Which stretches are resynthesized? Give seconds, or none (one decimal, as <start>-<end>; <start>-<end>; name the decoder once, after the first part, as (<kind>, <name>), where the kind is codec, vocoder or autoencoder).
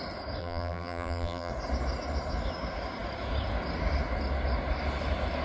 0.4-1.5 (vocoder, BigVGAN v2)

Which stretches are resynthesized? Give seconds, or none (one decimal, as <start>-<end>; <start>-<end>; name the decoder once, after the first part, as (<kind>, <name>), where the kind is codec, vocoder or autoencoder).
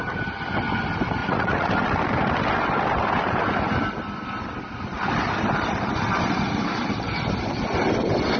1.2-1.7 (vocoder, Vocos)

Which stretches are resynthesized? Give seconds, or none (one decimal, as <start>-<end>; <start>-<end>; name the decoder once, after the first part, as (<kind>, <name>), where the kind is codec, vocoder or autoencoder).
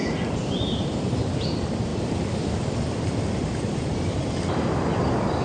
0.0-1.2 (vocoder, BigVGAN v2); 1.9-4.9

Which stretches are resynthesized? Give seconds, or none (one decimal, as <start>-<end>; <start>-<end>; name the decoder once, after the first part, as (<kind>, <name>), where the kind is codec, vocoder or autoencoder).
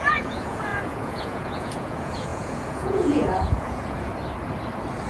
0.0-4.1 (vocoder, Vocos)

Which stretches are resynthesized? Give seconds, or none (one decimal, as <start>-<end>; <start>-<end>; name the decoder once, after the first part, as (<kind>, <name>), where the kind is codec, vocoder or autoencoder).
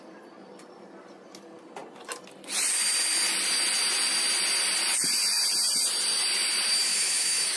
6.9-7.6 (autoencoder, DAC-VAE)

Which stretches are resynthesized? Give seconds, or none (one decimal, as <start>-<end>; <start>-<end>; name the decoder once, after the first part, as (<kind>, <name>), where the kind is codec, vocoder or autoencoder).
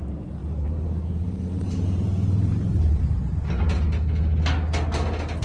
0.4-3.6 (vocoder, BigVGAN v2)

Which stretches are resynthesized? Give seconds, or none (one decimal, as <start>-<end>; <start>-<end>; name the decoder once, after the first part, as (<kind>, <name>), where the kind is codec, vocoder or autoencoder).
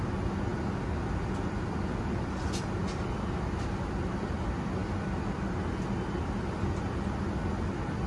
none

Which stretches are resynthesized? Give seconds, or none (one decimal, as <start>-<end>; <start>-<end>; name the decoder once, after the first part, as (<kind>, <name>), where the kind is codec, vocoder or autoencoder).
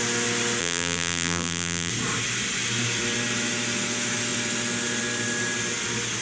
0.6-1.9 (vocoder, BigVGAN v2)